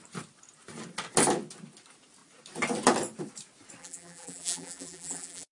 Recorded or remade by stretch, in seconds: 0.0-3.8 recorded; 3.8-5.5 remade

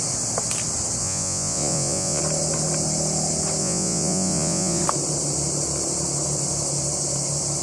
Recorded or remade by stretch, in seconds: 0.0-1.0 recorded; 1.0-2.2 remade; 2.2-3.6 recorded; 3.6-4.8 remade; 4.8-7.6 recorded

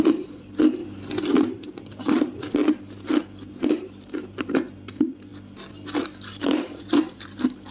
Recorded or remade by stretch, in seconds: 0.0-0.8 remade; 0.8-1.3 recorded; 1.3-2.6 remade; 2.6-3.5 recorded; 3.5-5.3 remade; 5.3-6.0 recorded; 6.0-7.7 remade

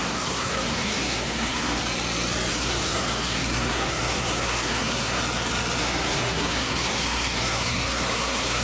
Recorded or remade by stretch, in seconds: 0.0-1.8 remade; 1.8-2.5 recorded; 2.5-5.2 remade; 5.2-5.8 recorded; 5.8-8.6 remade

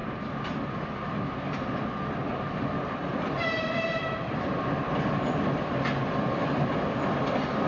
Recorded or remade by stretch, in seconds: 0.0-3.1 recorded; 3.1-7.3 remade; 7.3-7.7 recorded

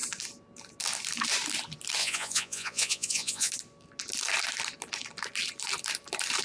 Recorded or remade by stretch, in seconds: 0.0-2.0 recorded; 2.0-3.5 remade; 3.5-6.4 recorded

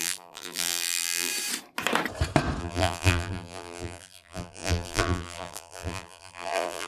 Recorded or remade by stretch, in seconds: 0.0-1.3 remade; 1.3-2.6 recorded; 2.6-6.9 remade

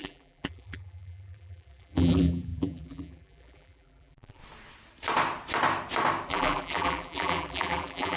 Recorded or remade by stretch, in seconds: 0.0-4.4 remade; 4.4-6.3 recorded; 6.3-8.2 remade